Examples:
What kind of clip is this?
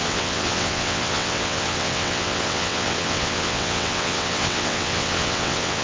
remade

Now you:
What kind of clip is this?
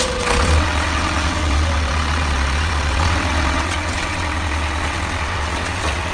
remade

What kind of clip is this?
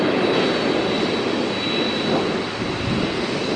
recorded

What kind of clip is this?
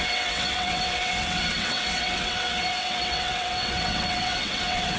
remade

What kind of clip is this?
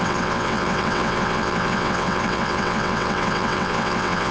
remade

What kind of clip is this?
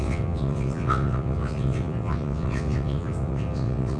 remade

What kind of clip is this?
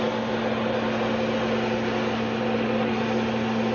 recorded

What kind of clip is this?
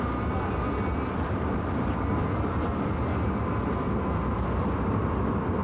recorded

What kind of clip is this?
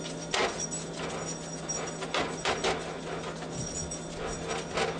recorded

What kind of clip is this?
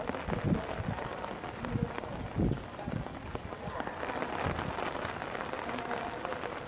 recorded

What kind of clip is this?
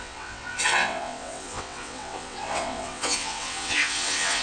remade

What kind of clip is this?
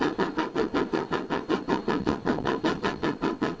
remade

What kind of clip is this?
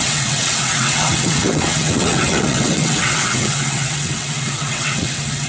remade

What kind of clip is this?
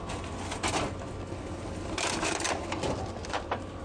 recorded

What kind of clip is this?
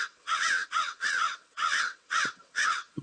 remade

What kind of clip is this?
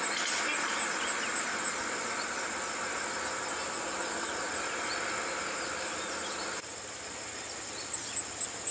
recorded